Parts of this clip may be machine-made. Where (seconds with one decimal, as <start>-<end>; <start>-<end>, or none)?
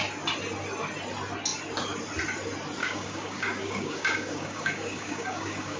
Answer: 2.8-5.8